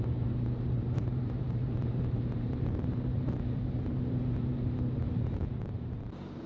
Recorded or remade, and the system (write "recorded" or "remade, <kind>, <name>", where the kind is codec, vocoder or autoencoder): remade, vocoder, BigVGAN v2